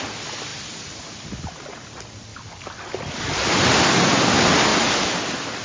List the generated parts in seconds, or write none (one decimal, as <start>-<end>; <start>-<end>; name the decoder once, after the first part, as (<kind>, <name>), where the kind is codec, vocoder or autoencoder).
0.5-1.2 (vocoder, BigVGAN v2); 2.3-3.0